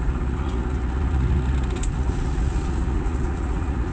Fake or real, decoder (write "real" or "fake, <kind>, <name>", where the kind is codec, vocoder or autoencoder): fake, vocoder, Vocos